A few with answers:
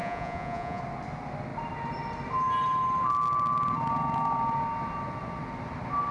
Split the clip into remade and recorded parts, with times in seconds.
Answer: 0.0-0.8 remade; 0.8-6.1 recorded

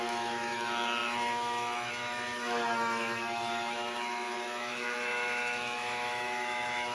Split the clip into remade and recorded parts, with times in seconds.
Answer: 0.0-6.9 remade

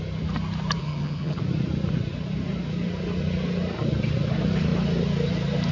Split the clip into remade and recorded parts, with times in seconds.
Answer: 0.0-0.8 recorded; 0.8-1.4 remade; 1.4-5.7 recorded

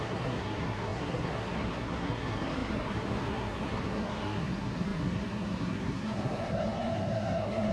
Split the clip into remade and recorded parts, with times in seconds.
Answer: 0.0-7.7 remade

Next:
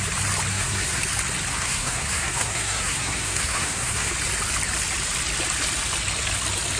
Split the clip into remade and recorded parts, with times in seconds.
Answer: 0.0-0.5 recorded; 0.5-1.0 remade; 1.0-1.5 recorded; 1.5-4.1 remade; 4.1-6.8 recorded

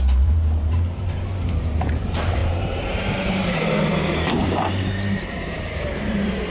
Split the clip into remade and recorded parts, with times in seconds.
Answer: 0.0-6.5 remade

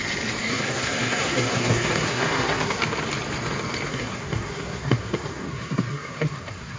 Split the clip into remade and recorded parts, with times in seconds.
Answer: 0.0-0.4 recorded; 0.4-2.8 remade; 2.8-3.9 recorded; 3.9-6.8 remade